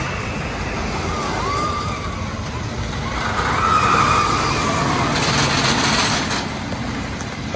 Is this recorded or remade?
recorded